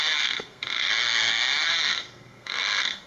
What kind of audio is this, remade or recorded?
remade